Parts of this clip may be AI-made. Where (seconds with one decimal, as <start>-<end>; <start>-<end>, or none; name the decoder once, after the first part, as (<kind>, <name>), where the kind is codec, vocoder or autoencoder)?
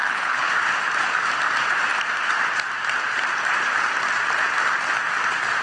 0.0-0.5 (codec, HILCodec)